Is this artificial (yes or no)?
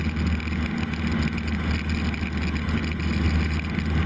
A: no